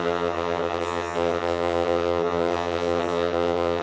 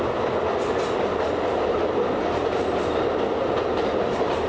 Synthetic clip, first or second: first